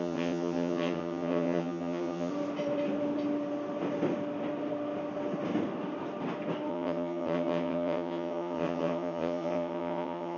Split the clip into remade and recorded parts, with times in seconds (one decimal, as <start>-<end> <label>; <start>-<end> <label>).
0.0-2.3 remade; 2.3-6.7 recorded; 6.7-10.4 remade